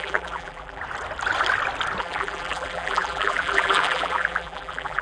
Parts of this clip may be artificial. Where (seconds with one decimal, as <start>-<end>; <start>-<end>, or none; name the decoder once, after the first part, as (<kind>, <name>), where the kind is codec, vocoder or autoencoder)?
0.0-0.8 (vocoder, BigVGAN v2); 2.0-5.0